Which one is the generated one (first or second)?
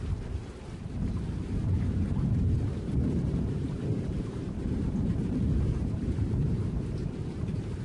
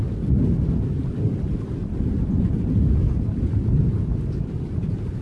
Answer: first